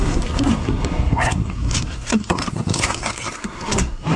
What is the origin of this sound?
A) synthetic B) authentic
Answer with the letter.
A